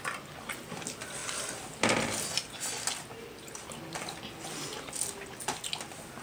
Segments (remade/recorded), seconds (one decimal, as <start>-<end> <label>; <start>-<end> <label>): 0.0-6.2 recorded